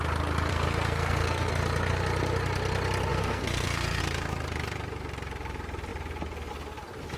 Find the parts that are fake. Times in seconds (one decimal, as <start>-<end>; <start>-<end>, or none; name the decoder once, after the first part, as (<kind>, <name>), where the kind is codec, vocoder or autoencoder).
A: 0.5-1.5 (codec, SNAC); 3.1-4.0